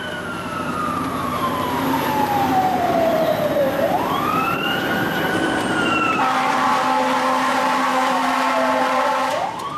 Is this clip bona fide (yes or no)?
no